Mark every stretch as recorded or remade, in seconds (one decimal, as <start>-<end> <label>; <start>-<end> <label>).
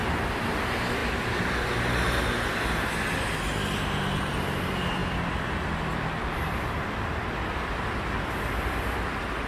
0.0-9.5 recorded